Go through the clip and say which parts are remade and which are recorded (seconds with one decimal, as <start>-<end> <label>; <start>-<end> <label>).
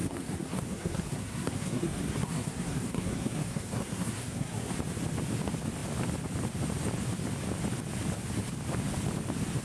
0.0-4.7 remade; 4.7-9.6 recorded